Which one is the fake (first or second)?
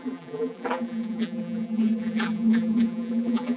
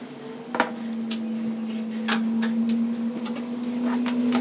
first